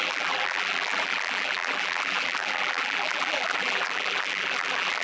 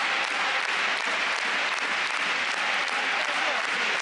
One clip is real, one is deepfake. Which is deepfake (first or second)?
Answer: first